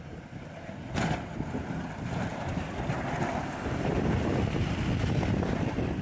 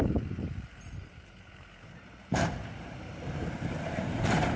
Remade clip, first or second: second